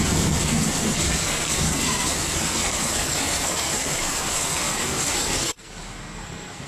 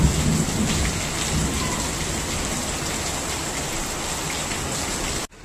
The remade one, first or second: first